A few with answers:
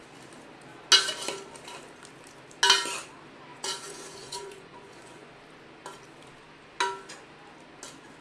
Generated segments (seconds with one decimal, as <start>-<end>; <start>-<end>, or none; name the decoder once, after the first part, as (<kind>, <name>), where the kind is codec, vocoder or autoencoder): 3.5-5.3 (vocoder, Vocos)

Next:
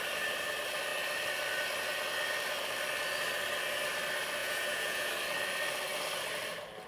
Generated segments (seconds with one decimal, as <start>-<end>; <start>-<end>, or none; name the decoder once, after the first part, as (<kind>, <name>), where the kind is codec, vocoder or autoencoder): 4.4-5.1 (vocoder, Vocos)

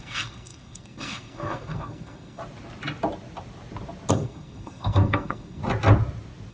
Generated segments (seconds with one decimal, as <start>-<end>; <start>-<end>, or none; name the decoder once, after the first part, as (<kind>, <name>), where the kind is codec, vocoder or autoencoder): 0.0-2.4 (codec, SNAC); 4.1-5.6

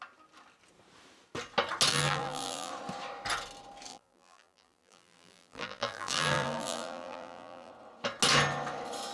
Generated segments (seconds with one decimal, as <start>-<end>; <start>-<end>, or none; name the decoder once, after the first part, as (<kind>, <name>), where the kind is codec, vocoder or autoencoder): 1.9-2.7 (vocoder, BigVGAN v2); 3.9-7.7

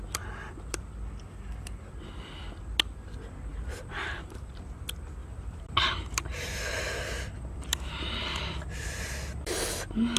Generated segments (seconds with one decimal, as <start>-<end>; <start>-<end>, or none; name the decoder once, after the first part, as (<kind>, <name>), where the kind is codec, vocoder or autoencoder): 3.5-4.5 (vocoder, BigVGAN v2); 5.2-6.6; 7.7-9.1

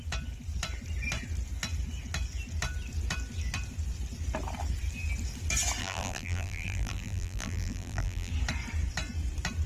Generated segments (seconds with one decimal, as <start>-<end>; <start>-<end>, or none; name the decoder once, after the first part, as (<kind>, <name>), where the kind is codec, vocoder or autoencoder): 5.8-8.3 (vocoder, BigVGAN v2)

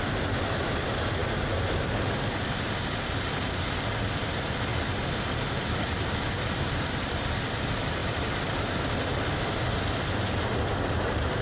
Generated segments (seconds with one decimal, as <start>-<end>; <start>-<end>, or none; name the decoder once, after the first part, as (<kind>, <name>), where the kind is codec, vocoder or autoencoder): 0.0-1.2 (vocoder, BigVGAN v2); 3.0-11.4

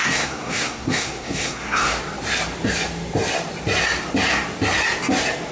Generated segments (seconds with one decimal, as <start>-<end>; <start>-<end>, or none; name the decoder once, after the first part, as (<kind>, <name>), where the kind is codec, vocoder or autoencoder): 0.0-2.0 (codec, SNAC)